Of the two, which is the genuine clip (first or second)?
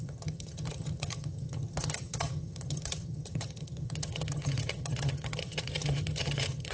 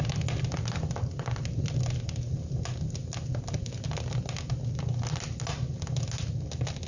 second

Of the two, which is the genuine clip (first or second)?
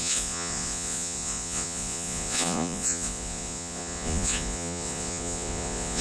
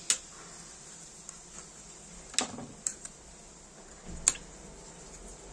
second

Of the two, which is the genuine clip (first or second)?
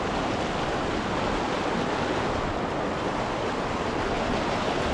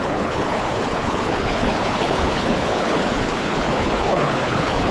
first